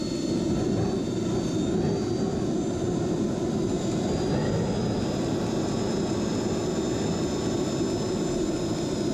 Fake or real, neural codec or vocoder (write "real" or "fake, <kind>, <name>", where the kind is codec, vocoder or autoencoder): real